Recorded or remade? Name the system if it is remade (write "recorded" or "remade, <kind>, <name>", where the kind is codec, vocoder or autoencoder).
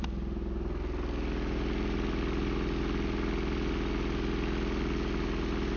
recorded